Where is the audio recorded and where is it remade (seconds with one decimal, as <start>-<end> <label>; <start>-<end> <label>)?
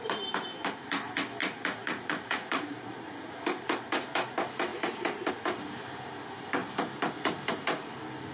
0.0-1.4 recorded; 1.4-3.3 remade; 3.3-8.3 recorded